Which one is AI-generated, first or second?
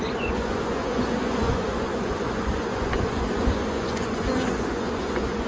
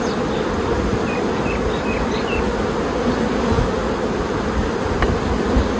first